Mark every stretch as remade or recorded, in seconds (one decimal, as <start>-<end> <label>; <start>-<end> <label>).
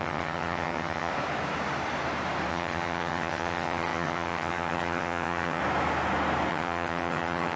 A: 0.0-1.1 remade; 1.1-2.5 recorded; 2.5-5.6 remade; 5.6-6.5 recorded; 6.5-7.6 remade